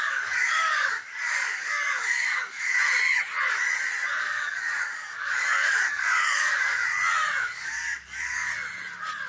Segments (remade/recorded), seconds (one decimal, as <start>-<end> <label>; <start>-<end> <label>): 0.0-2.7 remade; 2.7-4.2 recorded; 4.2-6.8 remade; 6.8-7.4 recorded; 7.4-8.5 remade; 8.5-9.3 recorded